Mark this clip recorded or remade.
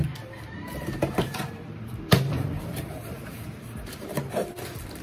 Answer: remade